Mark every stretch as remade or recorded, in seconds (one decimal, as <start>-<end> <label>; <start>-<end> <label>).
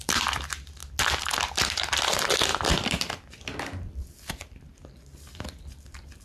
0.0-0.8 remade; 0.8-1.5 recorded; 1.5-6.2 remade